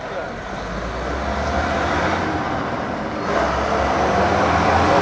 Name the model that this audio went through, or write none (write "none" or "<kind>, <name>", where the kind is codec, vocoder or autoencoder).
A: none